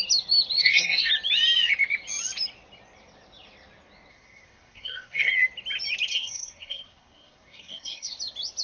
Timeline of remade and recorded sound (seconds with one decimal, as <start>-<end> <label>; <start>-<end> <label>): 0.0-0.6 recorded; 0.6-1.1 remade; 1.1-4.1 recorded; 4.1-5.3 remade; 5.3-6.1 recorded; 6.1-8.2 remade; 8.2-8.6 recorded